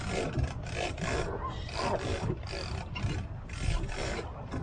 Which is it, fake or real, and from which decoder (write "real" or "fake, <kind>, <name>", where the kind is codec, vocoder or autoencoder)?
fake, vocoder, BigVGAN v2